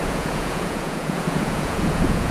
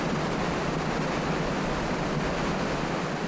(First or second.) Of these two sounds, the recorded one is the second